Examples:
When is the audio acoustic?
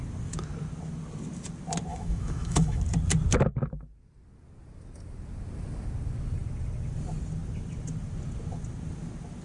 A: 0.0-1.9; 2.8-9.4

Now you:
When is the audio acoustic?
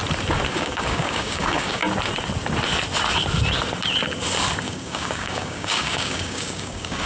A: 0.0-0.5; 1.8-4.6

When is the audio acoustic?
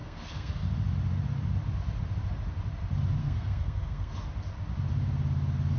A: 0.5-3.2; 4.1-5.8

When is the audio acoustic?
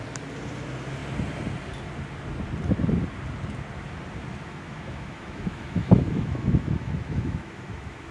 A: 0.0-4.3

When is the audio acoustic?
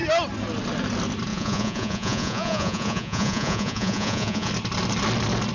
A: 0.0-1.3; 4.5-5.5